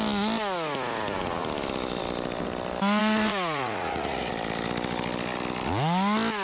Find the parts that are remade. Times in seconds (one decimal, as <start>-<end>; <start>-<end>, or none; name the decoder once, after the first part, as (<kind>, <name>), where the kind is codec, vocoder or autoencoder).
3.0-4.3 (vocoder, Vocos)

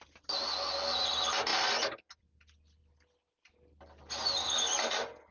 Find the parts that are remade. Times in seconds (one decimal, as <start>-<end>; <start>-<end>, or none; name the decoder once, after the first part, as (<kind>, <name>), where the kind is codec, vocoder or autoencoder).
none